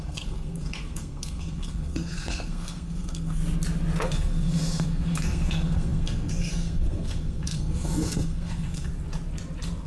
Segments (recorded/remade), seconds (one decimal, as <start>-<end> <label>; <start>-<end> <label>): 0.0-3.4 remade; 3.4-4.0 recorded; 4.0-8.9 remade; 8.9-9.9 recorded